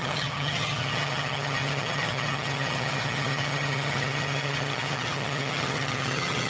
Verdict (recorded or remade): remade